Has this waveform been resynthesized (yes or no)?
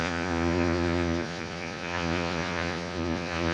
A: yes